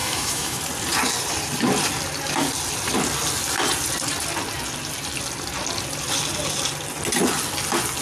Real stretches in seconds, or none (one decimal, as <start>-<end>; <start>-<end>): 0.6-8.0